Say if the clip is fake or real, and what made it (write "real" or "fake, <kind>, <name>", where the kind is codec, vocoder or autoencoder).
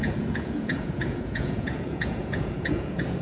fake, vocoder, Vocos